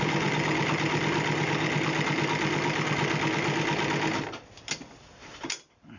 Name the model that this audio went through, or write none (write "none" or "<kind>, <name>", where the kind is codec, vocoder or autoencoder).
none